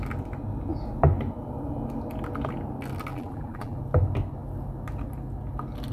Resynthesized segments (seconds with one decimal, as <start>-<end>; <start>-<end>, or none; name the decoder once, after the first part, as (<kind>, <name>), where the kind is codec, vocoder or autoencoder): 3.1-3.8 (vocoder, BigVGAN v2)

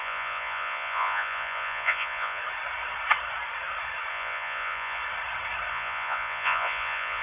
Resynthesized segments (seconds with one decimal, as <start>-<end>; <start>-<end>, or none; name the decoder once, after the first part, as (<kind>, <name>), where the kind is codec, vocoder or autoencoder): 0.0-2.4 (vocoder, Vocos); 4.1-5.0; 5.7-7.2